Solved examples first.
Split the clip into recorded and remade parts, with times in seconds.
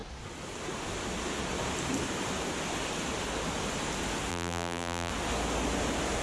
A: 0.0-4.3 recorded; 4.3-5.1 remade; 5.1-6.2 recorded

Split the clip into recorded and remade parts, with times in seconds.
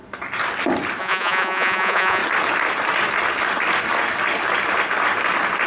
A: 0.0-1.0 recorded; 1.0-2.2 remade; 2.2-5.7 recorded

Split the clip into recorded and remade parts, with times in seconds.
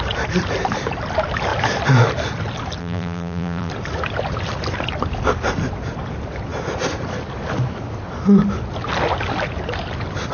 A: 0.0-2.8 recorded; 2.8-3.7 remade; 3.7-10.3 recorded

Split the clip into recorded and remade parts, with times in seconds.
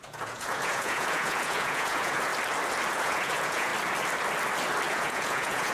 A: 0.0-2.3 remade; 2.3-2.9 recorded; 2.9-3.7 remade; 3.7-4.9 recorded; 4.9-5.7 remade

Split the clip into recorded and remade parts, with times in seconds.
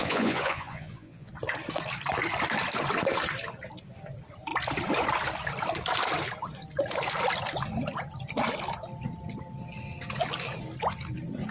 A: 0.0-1.3 remade; 1.3-11.5 recorded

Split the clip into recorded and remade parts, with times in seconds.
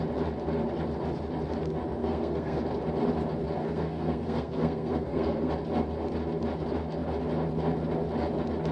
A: 0.0-2.0 recorded; 2.0-2.6 remade; 2.6-3.6 recorded; 3.6-5.5 remade; 5.5-8.7 recorded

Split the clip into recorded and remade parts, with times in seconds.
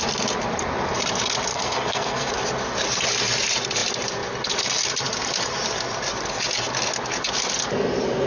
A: 0.0-1.5 recorded; 1.5-2.3 remade; 2.3-8.3 recorded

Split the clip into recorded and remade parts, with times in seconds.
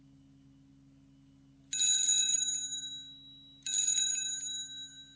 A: 0.0-5.2 recorded